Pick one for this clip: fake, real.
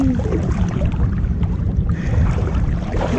fake